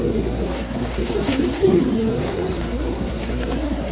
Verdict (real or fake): fake